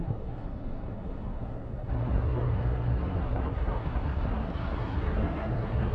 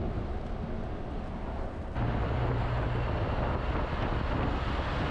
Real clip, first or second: second